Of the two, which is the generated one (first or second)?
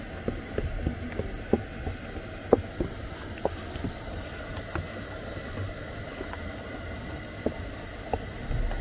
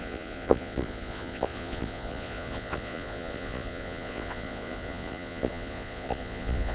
second